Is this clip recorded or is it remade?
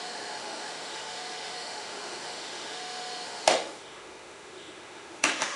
remade